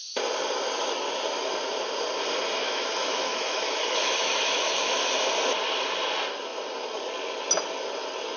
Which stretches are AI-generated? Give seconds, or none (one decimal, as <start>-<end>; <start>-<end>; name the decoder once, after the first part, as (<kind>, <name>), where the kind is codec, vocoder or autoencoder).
2.6-5.0 (autoencoder, DAC-VAE)